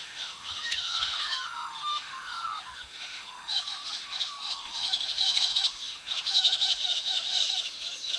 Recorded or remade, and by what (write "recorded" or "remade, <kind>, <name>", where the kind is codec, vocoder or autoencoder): remade, autoencoder, DAC-VAE